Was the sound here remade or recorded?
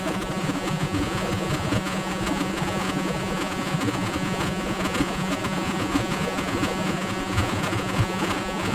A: remade